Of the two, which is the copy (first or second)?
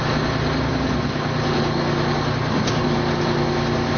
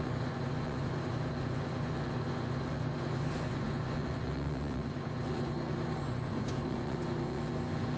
second